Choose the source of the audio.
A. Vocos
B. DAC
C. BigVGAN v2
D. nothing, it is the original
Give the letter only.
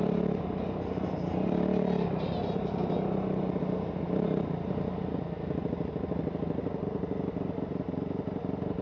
D